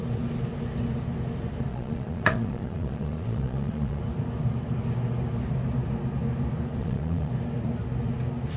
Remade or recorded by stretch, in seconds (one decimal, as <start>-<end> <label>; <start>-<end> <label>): 0.0-1.7 recorded; 1.7-4.0 remade; 4.0-6.8 recorded; 6.8-7.3 remade; 7.3-8.6 recorded